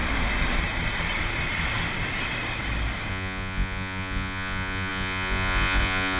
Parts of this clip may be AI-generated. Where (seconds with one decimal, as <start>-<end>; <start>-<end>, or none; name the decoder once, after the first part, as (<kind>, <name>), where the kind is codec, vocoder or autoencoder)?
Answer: 3.1-6.2 (vocoder, Vocos)